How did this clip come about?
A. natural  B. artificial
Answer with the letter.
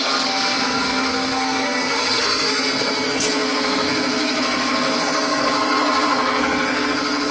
B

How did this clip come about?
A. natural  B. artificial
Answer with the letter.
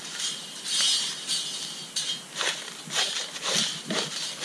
A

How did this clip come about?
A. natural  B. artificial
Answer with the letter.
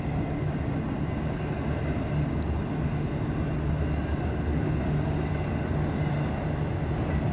A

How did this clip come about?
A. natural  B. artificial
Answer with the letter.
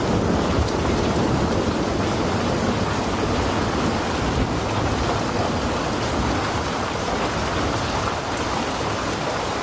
A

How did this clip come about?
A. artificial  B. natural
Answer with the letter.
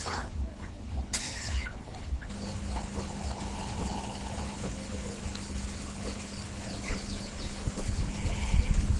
A